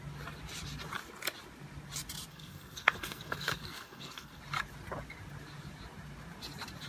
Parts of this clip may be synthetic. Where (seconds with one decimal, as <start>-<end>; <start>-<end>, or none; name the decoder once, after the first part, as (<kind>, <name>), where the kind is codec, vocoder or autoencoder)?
2.3-4.4 (codec, SNAC)